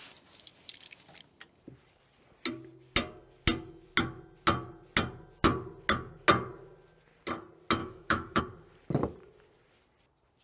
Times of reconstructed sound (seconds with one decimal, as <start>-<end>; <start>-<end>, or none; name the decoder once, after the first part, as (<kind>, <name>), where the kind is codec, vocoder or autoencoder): 7.8-8.4 (autoencoder, DAC-VAE)